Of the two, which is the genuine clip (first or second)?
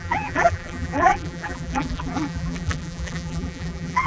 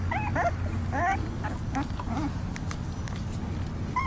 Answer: second